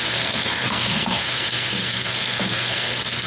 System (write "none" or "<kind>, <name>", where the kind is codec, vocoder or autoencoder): codec, SNAC